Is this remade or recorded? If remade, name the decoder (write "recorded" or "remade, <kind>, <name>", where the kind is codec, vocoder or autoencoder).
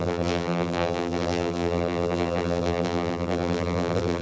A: remade, vocoder, BigVGAN v2